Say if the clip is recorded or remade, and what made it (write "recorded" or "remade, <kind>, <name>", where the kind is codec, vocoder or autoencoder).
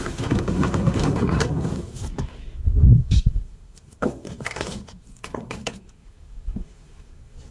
remade, codec, SNAC